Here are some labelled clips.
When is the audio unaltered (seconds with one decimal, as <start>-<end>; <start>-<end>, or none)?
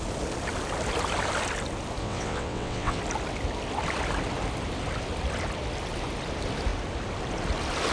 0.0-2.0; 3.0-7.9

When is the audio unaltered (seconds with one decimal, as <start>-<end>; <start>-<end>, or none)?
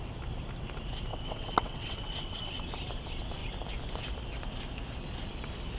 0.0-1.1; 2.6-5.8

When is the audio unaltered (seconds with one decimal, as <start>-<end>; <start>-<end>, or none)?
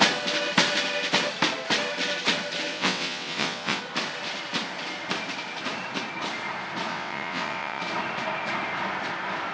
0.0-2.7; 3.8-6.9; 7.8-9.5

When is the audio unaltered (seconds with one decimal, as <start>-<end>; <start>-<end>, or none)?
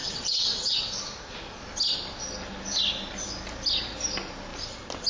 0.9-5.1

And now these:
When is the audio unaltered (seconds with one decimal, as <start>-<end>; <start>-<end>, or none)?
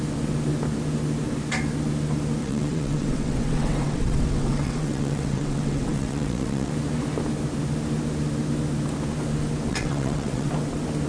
0.0-2.4; 6.7-9.7; 10.5-11.1